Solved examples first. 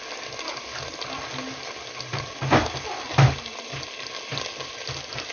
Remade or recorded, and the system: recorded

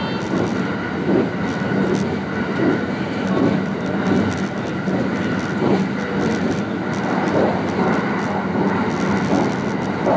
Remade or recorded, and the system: recorded